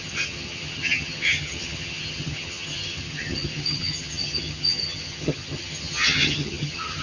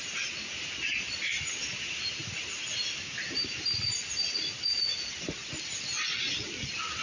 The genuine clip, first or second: second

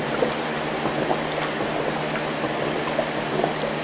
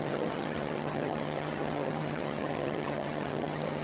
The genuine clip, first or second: first